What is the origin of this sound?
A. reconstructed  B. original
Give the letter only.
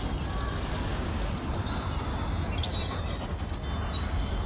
B